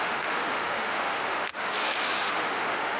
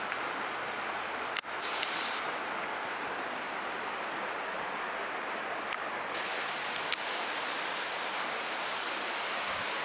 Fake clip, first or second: first